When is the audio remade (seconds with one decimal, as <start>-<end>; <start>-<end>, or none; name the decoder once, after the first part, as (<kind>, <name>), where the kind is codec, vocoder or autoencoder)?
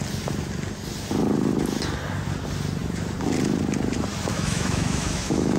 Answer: 4.3-5.6 (autoencoder, DAC-VAE)